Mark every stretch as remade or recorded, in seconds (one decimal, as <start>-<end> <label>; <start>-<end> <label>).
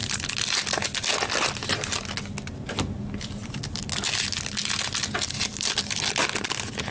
0.0-6.9 recorded